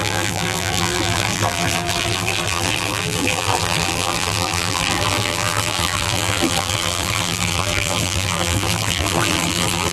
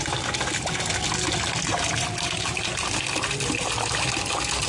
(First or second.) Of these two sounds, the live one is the second